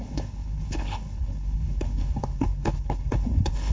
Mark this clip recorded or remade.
remade